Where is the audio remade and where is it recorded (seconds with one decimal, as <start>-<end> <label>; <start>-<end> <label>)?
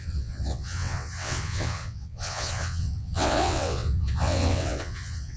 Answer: 0.0-5.4 remade